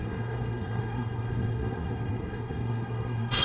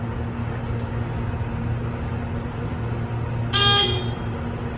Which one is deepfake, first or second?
first